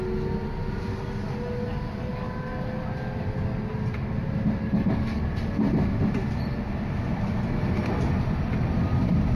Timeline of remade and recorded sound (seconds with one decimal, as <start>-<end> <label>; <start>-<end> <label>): 0.0-4.6 recorded; 4.6-5.2 remade; 5.2-9.4 recorded